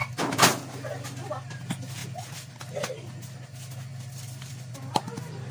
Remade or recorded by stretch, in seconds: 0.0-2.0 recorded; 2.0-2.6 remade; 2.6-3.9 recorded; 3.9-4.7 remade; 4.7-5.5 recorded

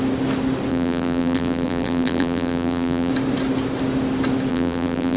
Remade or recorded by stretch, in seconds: 0.0-0.7 recorded; 0.7-3.1 remade; 3.1-4.5 recorded; 4.5-5.2 remade

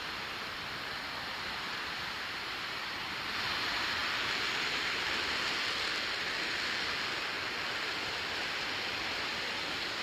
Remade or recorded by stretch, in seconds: 0.0-4.0 remade; 4.0-8.4 recorded; 8.4-10.0 remade

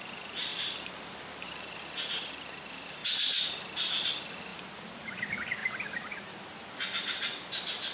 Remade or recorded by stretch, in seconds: 0.0-0.5 recorded; 0.5-1.8 remade; 1.8-3.0 recorded; 3.0-4.1 remade; 4.1-5.6 recorded; 5.6-6.5 remade; 6.5-7.9 recorded

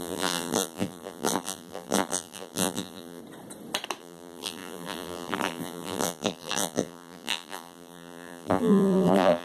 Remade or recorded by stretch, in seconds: 0.0-3.2 remade; 3.2-4.0 recorded; 4.0-9.4 remade

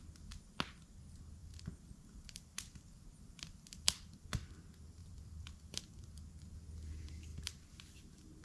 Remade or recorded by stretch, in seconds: 0.0-1.4 recorded; 1.4-4.5 remade; 4.5-5.0 recorded; 5.0-6.2 remade; 6.2-7.3 recorded; 7.3-8.4 remade

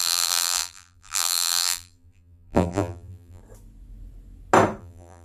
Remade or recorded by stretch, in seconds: 0.0-3.4 remade; 3.4-4.8 recorded; 4.8-5.2 remade

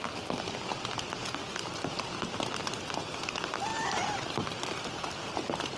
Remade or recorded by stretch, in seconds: 0.0-3.7 recorded; 3.7-4.8 remade; 4.8-5.8 recorded